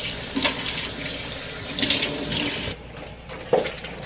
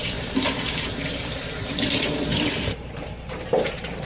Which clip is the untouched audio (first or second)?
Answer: first